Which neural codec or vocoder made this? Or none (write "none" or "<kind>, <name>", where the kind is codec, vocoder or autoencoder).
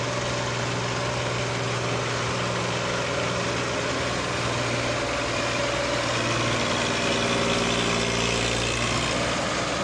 none